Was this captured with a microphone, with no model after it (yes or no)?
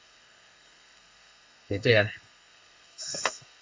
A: no